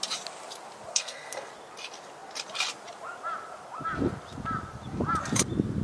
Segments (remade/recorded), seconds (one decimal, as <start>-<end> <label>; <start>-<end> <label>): 0.0-0.9 recorded; 0.9-1.5 remade; 1.5-5.8 recorded